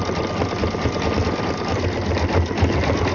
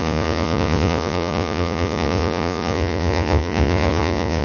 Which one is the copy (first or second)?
second